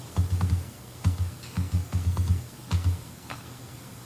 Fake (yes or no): yes